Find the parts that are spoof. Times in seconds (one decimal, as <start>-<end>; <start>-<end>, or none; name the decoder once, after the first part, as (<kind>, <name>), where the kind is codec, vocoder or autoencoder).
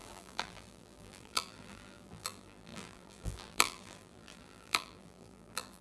0.0-5.8 (vocoder, BigVGAN v2)